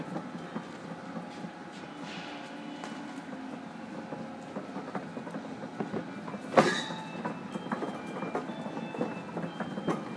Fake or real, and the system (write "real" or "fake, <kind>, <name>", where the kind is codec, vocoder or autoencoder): real